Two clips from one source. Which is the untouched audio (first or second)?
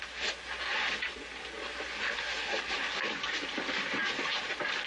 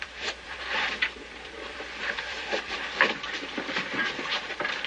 first